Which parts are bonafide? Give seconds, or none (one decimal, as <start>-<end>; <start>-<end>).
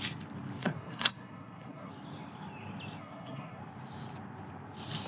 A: 0.0-0.6; 1.9-3.0; 3.6-5.1